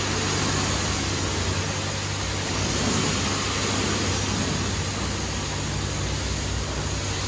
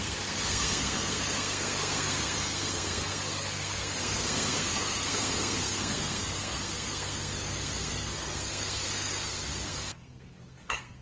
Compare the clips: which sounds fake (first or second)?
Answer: second